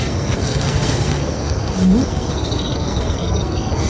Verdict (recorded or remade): remade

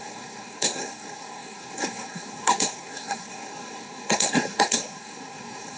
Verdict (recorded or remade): remade